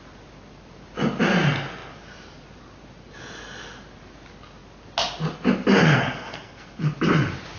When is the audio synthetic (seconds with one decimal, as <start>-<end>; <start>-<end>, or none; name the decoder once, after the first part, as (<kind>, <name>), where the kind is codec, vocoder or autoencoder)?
5.8-6.9 (codec, SNAC)